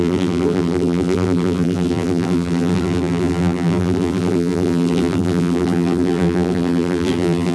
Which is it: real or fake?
fake